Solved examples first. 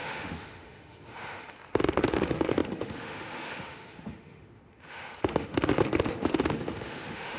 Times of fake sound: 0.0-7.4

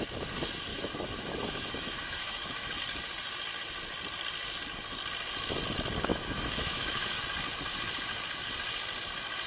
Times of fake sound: 0.7-2.8; 6.1-7.2

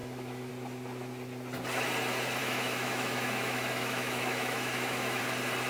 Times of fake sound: 0.0-0.5; 2.4-5.2